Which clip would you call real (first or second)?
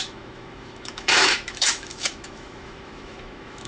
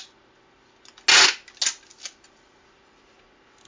second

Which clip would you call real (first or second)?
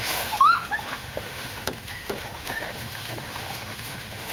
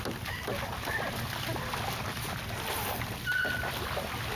second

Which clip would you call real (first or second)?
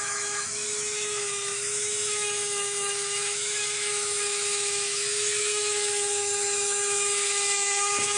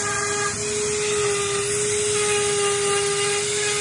second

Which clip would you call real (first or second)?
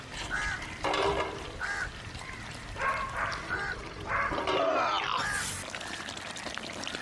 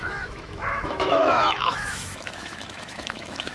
first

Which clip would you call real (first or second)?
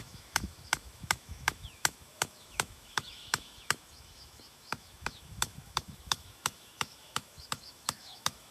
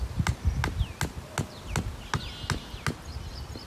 second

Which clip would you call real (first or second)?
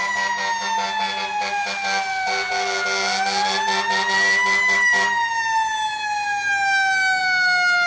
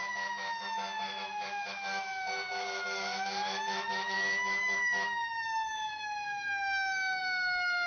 first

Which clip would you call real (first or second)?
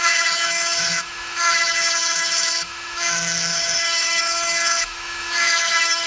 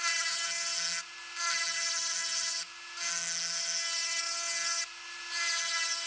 second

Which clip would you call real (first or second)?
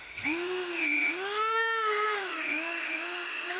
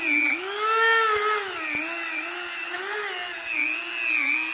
second